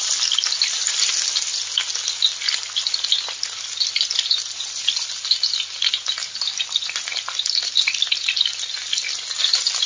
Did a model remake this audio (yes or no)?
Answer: no